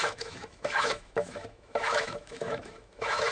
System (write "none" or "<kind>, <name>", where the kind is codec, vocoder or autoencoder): autoencoder, DAC-VAE